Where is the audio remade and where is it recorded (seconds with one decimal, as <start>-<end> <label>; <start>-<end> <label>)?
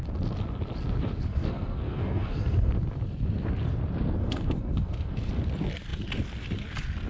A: 0.0-1.3 recorded; 1.3-2.7 remade; 2.7-4.2 recorded; 4.2-5.3 remade; 5.3-7.1 recorded